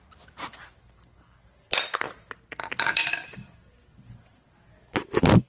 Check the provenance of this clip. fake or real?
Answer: real